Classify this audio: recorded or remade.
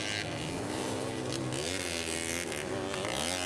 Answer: recorded